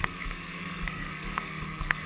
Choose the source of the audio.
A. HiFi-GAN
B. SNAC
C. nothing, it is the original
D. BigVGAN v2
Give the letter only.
B